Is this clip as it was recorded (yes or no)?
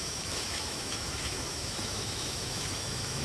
no